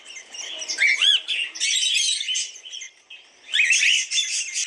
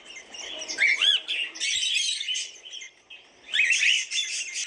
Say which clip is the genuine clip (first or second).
first